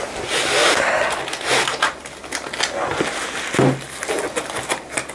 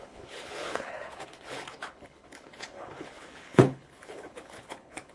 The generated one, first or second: second